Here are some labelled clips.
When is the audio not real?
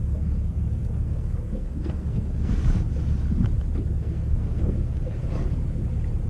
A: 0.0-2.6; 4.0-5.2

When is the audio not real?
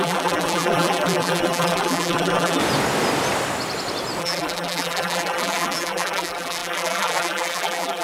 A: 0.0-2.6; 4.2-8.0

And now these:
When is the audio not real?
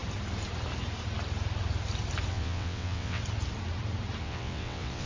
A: 2.3-3.2; 4.2-5.1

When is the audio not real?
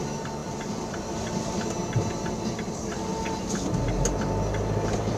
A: none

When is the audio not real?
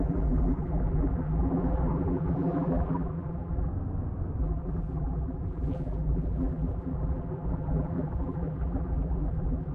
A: 0.0-3.7; 4.4-9.7